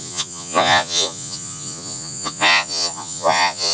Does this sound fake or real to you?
fake